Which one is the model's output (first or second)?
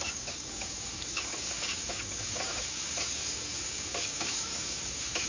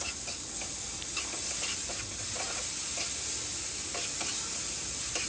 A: first